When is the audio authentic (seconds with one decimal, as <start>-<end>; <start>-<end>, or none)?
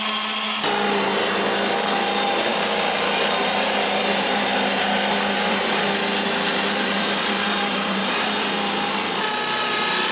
0.0-4.0; 5.9-6.5; 8.6-10.1